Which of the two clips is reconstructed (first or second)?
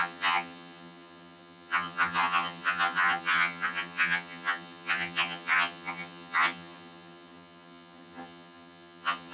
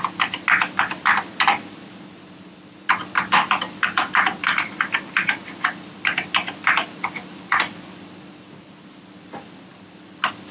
first